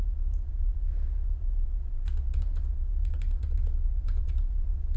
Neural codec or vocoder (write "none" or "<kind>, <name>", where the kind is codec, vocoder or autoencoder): vocoder, Vocos